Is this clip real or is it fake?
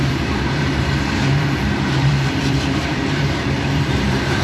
fake